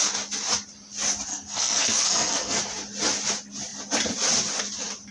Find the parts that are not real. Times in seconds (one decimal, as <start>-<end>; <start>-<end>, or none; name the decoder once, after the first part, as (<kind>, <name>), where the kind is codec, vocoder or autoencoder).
1.3-2.6 (codec, SNAC)